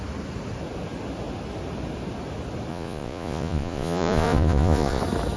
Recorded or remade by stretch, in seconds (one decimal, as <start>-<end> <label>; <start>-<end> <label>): 0.0-2.7 recorded; 2.7-5.0 remade; 5.0-5.4 recorded